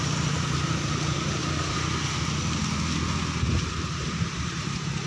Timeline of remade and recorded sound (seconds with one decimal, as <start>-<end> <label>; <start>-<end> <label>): 0.0-1.4 remade; 1.4-3.7 recorded; 3.7-5.1 remade